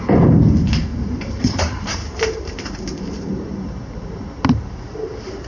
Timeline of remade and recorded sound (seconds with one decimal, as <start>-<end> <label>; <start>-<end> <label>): 0.0-0.9 recorded; 0.9-4.2 remade; 4.2-5.5 recorded